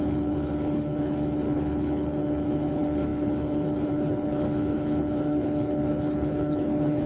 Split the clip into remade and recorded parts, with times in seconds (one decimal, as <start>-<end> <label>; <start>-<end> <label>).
0.0-7.1 remade